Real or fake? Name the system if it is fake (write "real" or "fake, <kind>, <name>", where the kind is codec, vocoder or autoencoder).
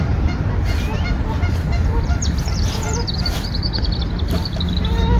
fake, vocoder, BigVGAN v2